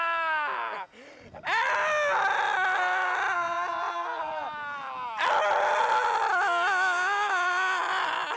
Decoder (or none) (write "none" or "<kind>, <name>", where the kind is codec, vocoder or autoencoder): none